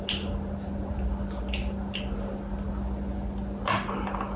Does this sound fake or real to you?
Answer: real